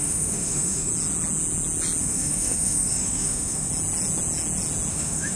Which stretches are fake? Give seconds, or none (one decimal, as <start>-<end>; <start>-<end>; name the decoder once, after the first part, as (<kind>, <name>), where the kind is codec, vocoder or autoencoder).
0.0-0.9 (autoencoder, DAC-VAE); 2.0-3.7; 4.9-5.4